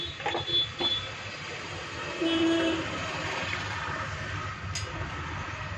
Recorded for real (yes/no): yes